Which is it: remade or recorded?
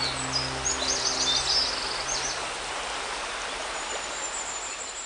recorded